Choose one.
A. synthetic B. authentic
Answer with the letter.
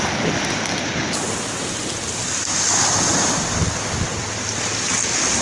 B